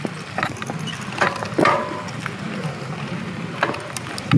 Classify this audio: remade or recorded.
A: recorded